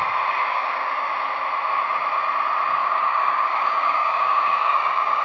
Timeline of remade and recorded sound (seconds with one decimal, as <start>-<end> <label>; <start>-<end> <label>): 0.0-0.4 recorded; 0.4-1.1 remade; 1.1-2.8 recorded; 2.8-5.2 remade

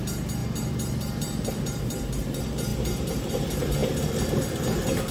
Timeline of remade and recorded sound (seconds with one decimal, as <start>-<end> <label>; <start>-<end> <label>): 0.0-3.8 remade; 3.8-5.1 recorded